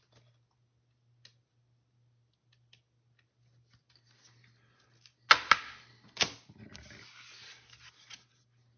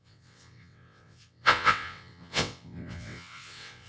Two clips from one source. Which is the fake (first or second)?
second